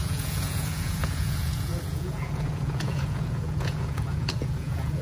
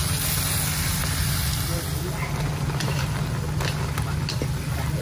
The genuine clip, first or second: second